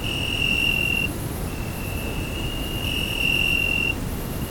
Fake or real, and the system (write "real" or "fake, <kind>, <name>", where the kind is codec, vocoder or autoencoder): real